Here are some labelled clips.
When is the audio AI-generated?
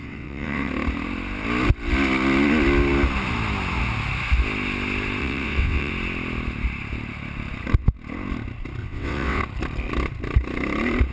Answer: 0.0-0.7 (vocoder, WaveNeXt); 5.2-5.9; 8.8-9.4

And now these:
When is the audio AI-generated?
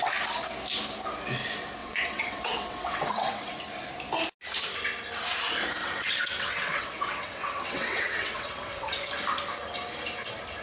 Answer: 1.8-3.5 (vocoder, WaveNeXt); 5.8-9.1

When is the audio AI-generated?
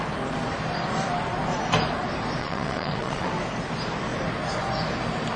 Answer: 2.4-3.3 (vocoder, WaveNeXt)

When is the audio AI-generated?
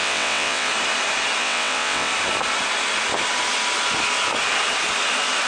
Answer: 0.0-0.7 (vocoder, WaveNeXt); 1.4-2.1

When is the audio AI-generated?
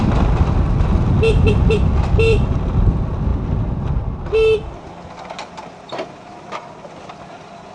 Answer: none